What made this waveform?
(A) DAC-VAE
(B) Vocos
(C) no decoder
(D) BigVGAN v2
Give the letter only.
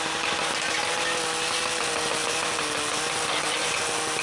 C